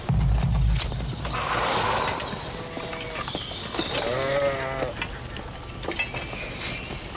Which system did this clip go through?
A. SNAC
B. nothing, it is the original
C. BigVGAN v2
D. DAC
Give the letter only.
B